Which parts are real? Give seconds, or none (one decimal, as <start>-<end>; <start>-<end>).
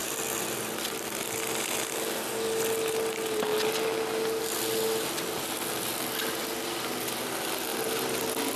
0.0-8.6